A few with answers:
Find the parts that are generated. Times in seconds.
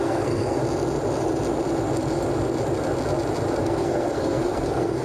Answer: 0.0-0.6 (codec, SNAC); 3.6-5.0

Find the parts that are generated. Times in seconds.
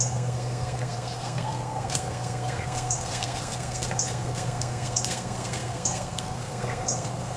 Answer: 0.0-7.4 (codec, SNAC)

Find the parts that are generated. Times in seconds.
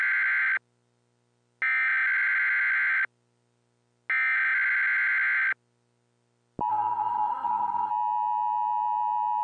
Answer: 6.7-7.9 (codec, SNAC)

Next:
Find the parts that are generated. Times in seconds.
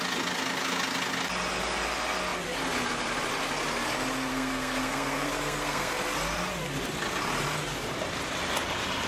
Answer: 4.3-5.9 (codec, SNAC)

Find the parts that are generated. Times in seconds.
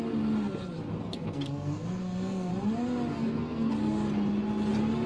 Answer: 0.9-2.5 (codec, SNAC); 3.1-3.7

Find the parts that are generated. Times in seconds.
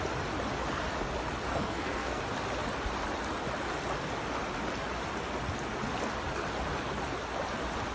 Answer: 1.5-2.2 (codec, SNAC)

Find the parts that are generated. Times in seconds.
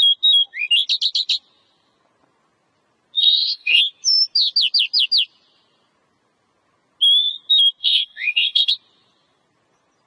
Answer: 3.2-3.8 (codec, SNAC); 7.8-8.7